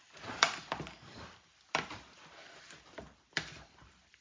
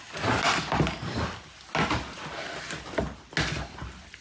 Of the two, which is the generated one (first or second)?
first